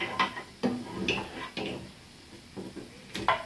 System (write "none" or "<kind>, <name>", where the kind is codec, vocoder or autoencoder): none